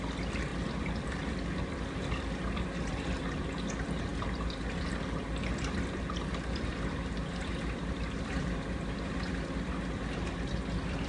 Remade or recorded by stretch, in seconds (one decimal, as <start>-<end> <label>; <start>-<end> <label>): 0.0-11.1 remade